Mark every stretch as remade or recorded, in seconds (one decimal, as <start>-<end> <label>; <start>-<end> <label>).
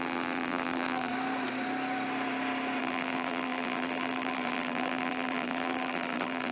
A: 0.0-1.1 remade; 1.1-2.8 recorded; 2.8-6.5 remade